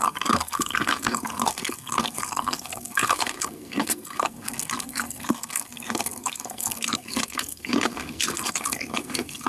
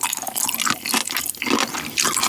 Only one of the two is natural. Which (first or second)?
second